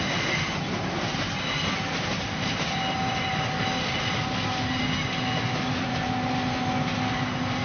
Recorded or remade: recorded